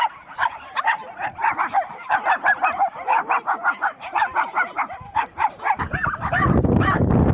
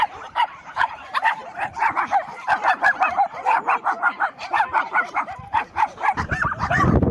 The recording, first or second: first